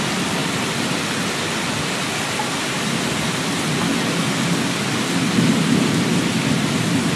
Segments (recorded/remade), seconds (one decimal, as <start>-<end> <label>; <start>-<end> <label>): 0.0-7.2 recorded